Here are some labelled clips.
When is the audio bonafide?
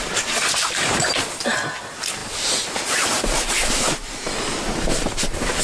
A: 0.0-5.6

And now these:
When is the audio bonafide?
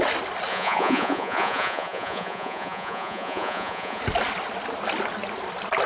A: 0.0-0.5; 4.0-5.9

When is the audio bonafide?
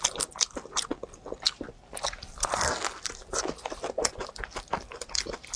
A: 0.0-5.6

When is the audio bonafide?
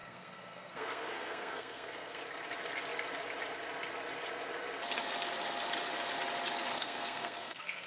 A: 2.2-6.7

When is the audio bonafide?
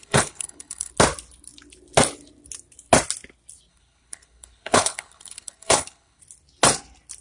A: 0.9-3.7; 6.2-7.2